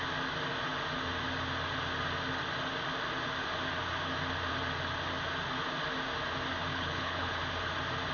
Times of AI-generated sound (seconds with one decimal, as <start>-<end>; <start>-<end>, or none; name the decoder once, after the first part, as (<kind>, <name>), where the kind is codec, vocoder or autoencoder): 6.7-7.4 (codec, HILCodec)